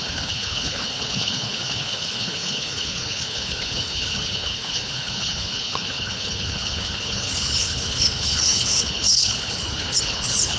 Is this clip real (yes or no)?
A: no